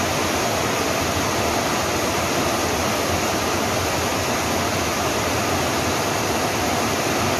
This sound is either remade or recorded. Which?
recorded